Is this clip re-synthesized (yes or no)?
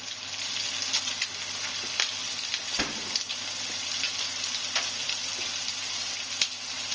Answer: no